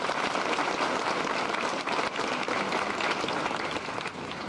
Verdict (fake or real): real